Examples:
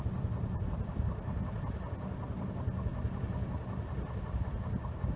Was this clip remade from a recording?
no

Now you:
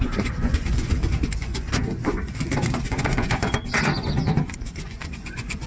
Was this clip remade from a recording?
yes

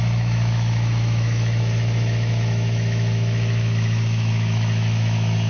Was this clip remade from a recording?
yes